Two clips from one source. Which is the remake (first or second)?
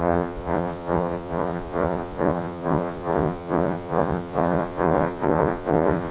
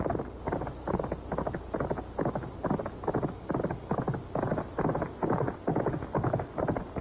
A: first